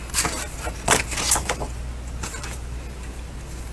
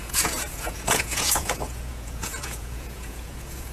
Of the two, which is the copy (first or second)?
second